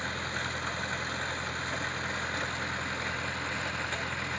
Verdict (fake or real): real